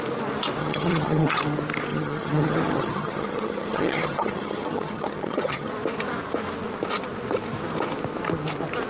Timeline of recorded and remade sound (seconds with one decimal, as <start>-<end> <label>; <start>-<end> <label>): 0.0-0.6 recorded; 0.6-1.4 remade; 1.4-1.9 recorded; 1.9-5.7 remade; 5.7-8.9 recorded